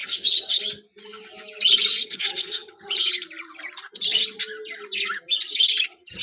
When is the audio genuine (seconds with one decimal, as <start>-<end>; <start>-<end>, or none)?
0.6-2.0; 3.1-6.2